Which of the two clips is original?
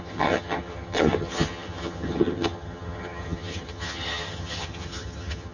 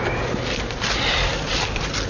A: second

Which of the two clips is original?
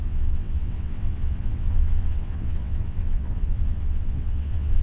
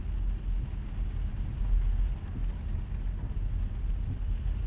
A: second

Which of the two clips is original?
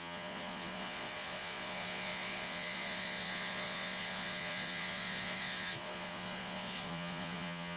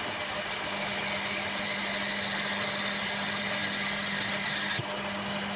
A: second